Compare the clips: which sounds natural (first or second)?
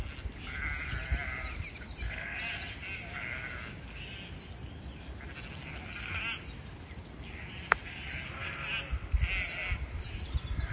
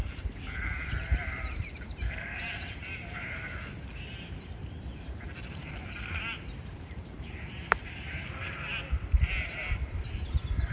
first